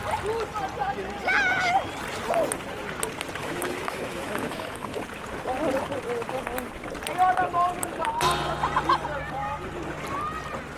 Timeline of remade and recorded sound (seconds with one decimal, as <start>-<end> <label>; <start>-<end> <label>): 0.0-3.4 recorded; 3.4-5.0 remade; 5.0-10.8 recorded